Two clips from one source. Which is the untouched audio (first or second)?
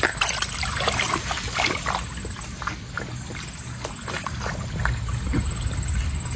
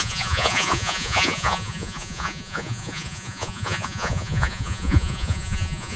first